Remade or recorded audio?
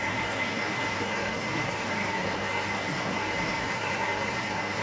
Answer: remade